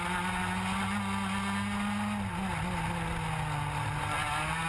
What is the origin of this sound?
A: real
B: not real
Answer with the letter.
A